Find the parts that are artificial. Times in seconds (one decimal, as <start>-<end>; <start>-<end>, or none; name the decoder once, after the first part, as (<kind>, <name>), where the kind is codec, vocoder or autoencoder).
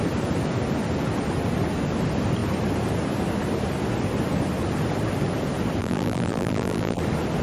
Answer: 5.8-7.0 (vocoder, BigVGAN v2)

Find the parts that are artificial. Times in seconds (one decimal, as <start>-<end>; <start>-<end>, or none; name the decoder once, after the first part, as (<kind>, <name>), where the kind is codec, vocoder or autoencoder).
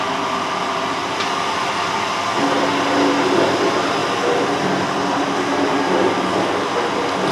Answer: none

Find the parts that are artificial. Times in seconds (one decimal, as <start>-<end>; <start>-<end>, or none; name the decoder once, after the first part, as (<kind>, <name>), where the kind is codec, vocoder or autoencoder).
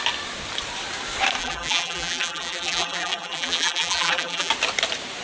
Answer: 1.4-4.5 (vocoder, BigVGAN v2)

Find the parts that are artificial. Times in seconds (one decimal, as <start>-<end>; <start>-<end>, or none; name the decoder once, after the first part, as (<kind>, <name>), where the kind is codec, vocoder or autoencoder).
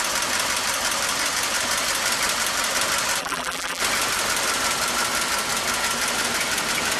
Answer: 3.2-3.8 (vocoder, BigVGAN v2)